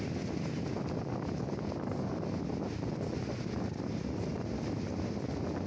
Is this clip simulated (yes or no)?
no